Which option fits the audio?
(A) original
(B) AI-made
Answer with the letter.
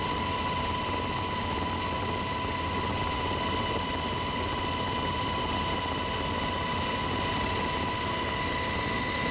A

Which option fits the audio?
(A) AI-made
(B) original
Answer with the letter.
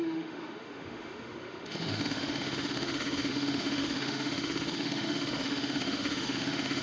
A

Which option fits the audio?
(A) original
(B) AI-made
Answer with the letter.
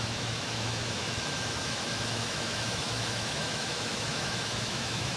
B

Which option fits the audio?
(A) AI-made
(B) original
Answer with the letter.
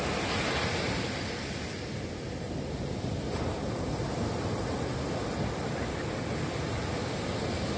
B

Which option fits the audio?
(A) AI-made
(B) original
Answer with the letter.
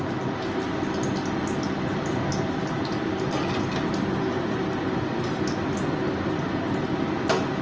B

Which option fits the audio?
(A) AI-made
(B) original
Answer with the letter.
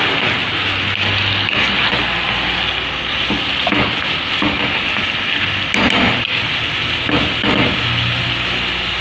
B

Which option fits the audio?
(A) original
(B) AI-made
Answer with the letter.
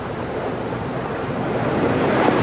B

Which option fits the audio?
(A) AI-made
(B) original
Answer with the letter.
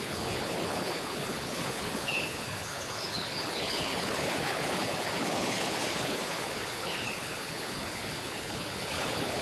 A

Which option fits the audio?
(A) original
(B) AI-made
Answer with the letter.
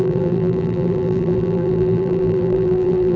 B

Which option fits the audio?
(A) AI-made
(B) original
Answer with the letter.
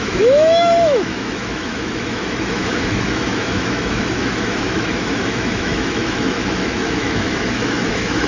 A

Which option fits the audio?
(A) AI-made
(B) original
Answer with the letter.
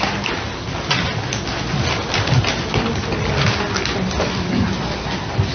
B